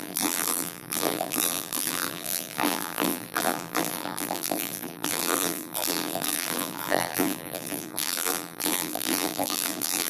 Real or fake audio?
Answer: fake